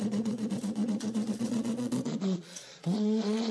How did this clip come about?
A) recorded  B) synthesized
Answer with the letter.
B